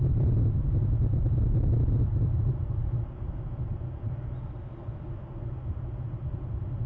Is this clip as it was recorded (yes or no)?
yes